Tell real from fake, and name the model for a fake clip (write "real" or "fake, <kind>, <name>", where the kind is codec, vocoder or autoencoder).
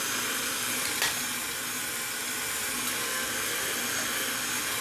real